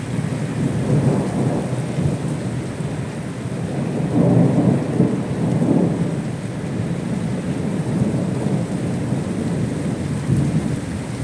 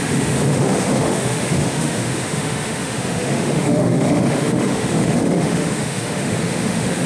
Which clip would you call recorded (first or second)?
first